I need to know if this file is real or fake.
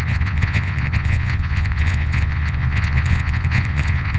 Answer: fake